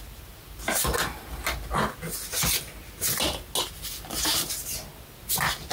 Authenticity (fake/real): real